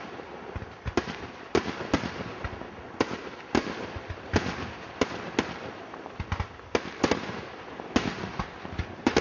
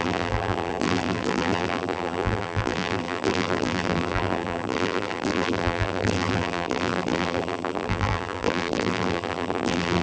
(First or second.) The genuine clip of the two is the first